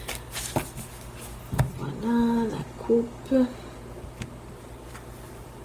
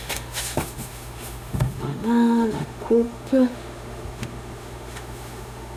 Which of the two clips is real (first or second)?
first